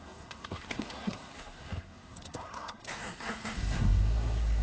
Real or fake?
fake